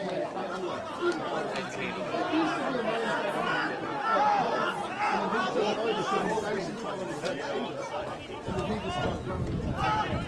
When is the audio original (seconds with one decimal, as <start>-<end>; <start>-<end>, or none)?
0.0-4.8; 6.2-9.0; 9.7-10.3